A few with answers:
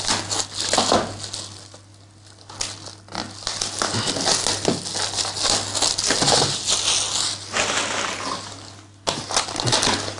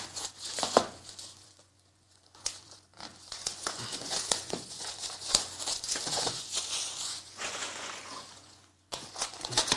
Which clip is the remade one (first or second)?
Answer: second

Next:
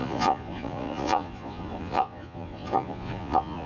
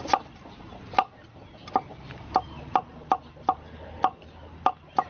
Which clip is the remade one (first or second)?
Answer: first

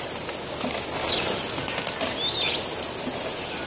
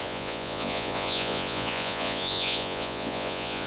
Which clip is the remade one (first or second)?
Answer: second